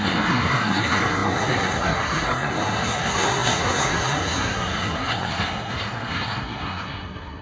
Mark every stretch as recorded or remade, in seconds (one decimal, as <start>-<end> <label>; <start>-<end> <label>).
0.0-7.4 remade